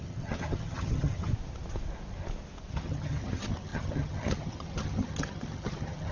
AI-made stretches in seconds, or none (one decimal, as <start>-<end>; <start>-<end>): 0.0-1.3; 2.7-6.1